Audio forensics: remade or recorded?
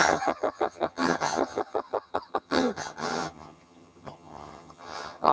remade